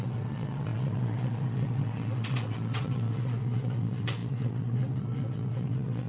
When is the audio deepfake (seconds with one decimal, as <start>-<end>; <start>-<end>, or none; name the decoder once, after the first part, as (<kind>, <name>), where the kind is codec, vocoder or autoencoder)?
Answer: 0.0-6.1 (vocoder, WaveNeXt)